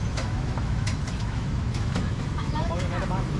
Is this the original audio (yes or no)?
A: no